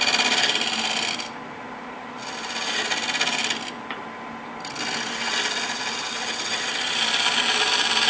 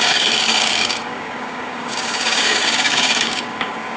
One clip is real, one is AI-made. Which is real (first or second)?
first